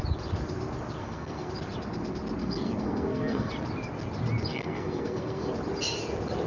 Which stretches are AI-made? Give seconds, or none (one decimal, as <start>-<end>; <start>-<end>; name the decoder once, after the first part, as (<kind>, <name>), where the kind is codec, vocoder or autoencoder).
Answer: 1.0-1.5 (codec, SNAC); 2.4-3.5; 4.5-5.5